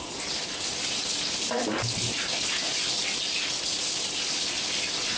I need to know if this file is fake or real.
real